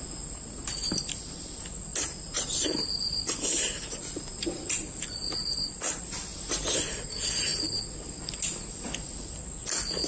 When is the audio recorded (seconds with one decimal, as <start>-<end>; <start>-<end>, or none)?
0.0-10.1